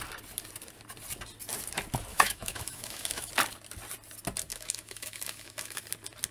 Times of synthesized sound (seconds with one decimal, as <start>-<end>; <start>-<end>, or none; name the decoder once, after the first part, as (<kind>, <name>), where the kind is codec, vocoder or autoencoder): 2.1-3.3 (autoencoder, DAC-VAE); 4.5-5.8